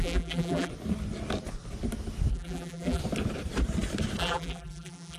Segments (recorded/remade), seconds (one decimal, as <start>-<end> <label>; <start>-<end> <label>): 0.0-0.7 remade; 0.7-2.3 recorded; 2.3-3.0 remade; 3.0-4.2 recorded; 4.2-5.2 remade